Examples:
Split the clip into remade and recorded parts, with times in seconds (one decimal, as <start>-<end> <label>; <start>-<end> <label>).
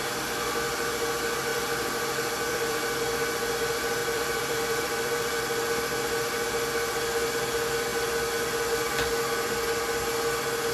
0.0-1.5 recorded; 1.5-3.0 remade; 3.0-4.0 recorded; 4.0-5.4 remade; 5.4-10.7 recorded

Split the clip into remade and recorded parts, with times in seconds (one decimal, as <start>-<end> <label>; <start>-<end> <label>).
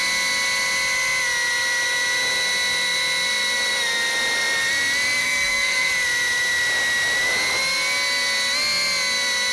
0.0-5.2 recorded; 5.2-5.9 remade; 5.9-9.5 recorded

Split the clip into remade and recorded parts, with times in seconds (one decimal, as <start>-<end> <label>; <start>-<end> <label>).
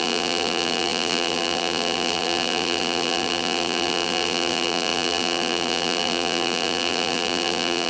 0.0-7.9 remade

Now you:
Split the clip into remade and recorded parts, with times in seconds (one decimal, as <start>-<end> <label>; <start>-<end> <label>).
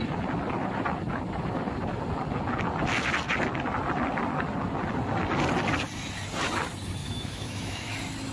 0.0-7.0 recorded; 7.0-7.9 remade; 7.9-8.3 recorded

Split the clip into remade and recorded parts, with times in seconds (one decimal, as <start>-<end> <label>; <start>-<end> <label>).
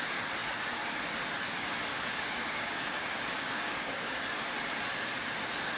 0.0-1.9 recorded; 1.9-4.2 remade; 4.2-5.8 recorded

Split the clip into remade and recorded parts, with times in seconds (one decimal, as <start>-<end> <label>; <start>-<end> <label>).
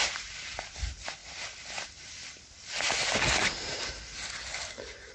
0.0-5.1 recorded